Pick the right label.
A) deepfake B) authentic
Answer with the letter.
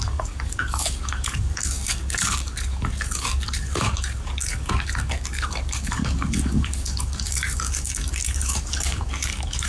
A